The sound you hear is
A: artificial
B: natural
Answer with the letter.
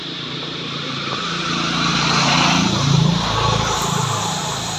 A